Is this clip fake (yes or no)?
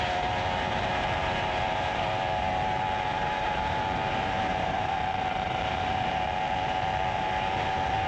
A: yes